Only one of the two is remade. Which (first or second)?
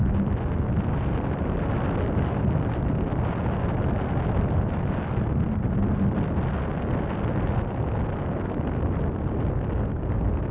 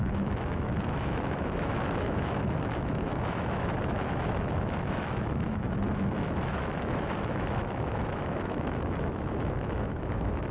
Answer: second